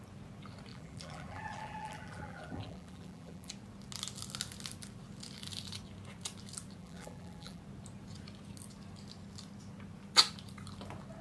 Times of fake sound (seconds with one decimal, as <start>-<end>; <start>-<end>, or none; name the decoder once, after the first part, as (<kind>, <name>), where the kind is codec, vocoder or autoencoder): 0.7-3.5 (vocoder, BigVGAN v2); 6.8-7.6